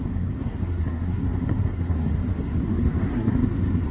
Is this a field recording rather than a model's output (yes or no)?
no